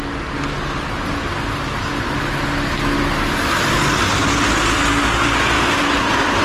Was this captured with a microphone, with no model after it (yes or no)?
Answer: yes